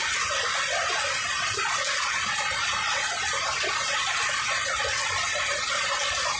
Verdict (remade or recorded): recorded